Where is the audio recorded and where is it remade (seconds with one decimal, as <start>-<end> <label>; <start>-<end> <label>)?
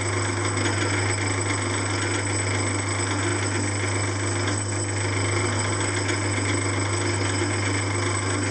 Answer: 0.0-8.5 recorded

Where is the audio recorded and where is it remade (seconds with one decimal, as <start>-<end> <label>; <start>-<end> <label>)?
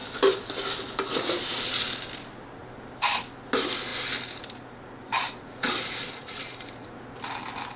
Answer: 0.0-2.6 recorded; 2.6-3.2 remade; 3.2-5.1 recorded; 5.1-7.2 remade; 7.2-7.8 recorded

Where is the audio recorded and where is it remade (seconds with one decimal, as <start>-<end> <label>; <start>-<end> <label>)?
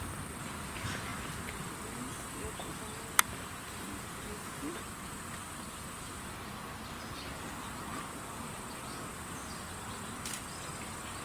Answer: 0.0-11.2 recorded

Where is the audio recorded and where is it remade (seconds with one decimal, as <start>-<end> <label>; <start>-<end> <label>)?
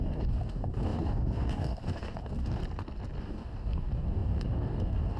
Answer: 0.0-2.6 remade; 2.6-3.2 recorded; 3.2-5.2 remade